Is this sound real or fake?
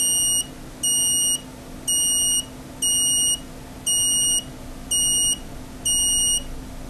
real